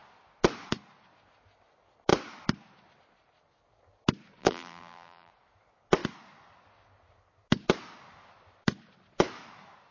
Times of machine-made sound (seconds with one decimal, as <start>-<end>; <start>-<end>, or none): 4.4-5.3